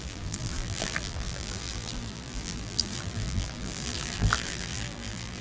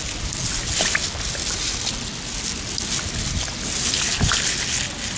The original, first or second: second